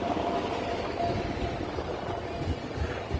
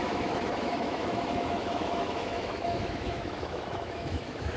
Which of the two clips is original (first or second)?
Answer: first